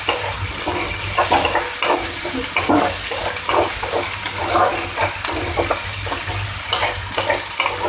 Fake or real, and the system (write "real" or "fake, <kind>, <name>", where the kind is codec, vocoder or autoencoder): real